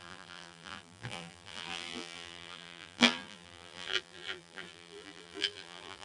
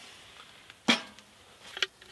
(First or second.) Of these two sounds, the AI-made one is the first